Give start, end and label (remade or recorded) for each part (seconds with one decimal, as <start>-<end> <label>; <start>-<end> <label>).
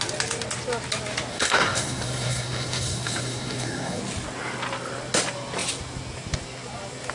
0.0-1.3 recorded; 1.3-4.0 remade; 4.0-7.1 recorded